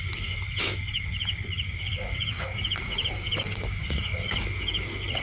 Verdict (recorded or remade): remade